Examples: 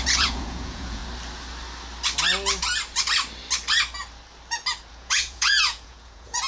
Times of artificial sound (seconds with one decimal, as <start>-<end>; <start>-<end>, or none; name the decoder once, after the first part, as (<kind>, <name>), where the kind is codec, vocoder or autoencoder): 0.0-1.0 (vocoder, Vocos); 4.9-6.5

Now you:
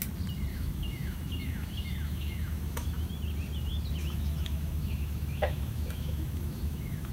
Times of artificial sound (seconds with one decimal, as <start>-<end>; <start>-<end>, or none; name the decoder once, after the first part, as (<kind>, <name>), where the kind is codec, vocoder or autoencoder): 0.5-3.1 (autoencoder, DAC-VAE); 4.0-7.1

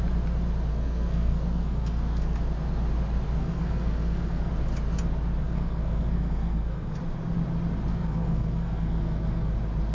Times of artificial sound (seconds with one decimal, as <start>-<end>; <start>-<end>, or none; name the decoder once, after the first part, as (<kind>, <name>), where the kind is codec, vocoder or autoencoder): 0.7-2.4 (codec, SNAC); 3.4-4.5; 5.4-7.0; 7.9-9.5

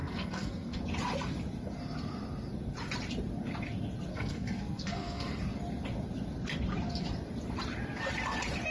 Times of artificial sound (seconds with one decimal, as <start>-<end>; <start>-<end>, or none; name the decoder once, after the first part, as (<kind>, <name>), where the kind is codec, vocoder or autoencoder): 0.0-0.8 (codec, SNAC); 4.1-5.4

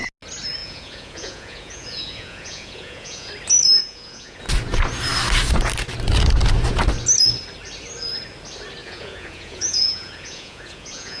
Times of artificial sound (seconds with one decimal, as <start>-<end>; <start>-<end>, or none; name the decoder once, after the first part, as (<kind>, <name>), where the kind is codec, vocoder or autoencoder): 0.6-3.3 (vocoder, Vocos); 3.8-4.4; 8.8-11.2